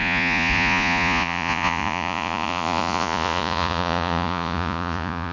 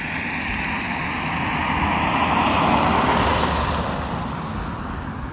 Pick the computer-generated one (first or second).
first